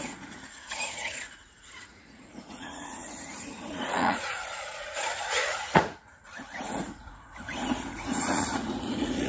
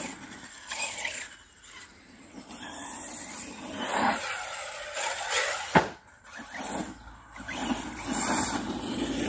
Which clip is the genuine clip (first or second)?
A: second